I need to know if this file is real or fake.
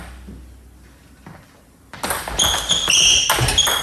real